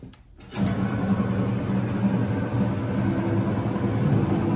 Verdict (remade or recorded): recorded